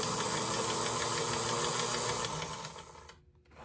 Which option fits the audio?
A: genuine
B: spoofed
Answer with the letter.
A